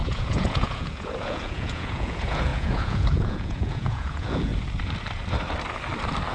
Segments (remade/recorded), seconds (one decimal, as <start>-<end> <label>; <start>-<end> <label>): 0.0-4.5 remade; 4.5-6.3 recorded